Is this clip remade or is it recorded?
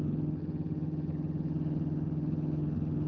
remade